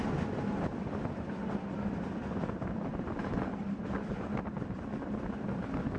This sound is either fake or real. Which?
real